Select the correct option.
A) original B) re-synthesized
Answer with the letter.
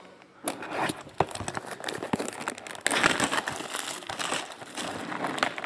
A